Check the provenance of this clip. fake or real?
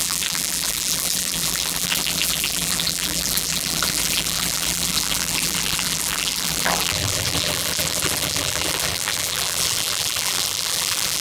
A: fake